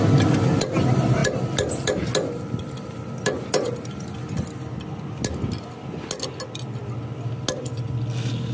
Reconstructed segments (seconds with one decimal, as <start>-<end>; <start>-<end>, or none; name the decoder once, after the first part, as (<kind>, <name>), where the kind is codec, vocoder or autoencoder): none